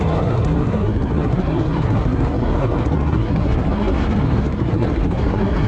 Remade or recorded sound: remade